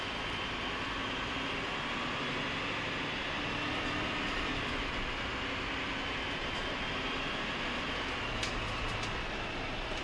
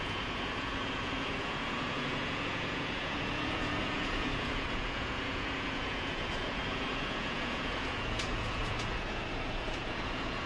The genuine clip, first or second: first